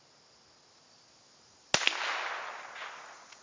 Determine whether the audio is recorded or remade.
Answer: recorded